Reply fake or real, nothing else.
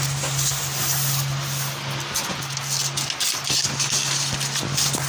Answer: real